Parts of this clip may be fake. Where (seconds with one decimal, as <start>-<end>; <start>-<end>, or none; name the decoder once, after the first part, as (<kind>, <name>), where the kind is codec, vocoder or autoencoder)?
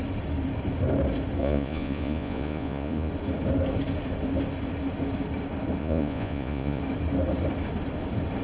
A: 1.4-3.1 (vocoder, Vocos); 5.8-6.8